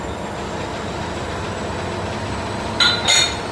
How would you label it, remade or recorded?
recorded